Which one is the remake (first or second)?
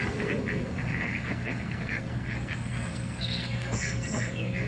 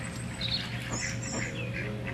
first